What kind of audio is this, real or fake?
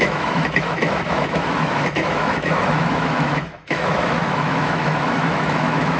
fake